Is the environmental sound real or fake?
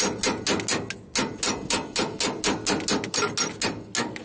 real